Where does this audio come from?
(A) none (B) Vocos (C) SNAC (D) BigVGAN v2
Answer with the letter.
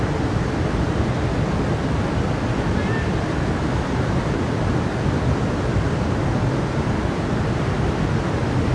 A